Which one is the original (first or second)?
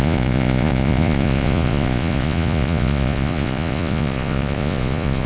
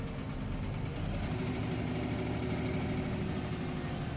second